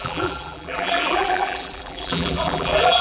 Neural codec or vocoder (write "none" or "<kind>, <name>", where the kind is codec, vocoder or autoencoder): vocoder, BigVGAN v2